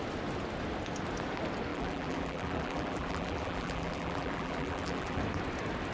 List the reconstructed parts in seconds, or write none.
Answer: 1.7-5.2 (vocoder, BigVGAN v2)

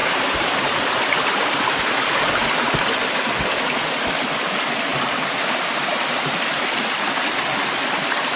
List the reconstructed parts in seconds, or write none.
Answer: 0.0-0.5 (vocoder, BigVGAN v2); 4.9-6.2